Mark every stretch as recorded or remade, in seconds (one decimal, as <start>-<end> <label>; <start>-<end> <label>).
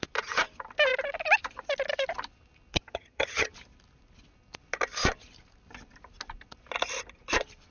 0.0-2.7 recorded; 2.7-3.5 remade; 3.5-7.7 recorded